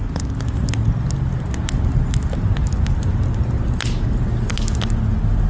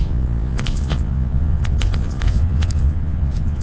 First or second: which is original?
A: first